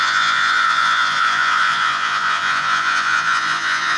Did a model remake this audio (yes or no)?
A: yes